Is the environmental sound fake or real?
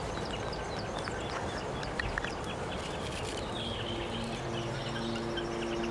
real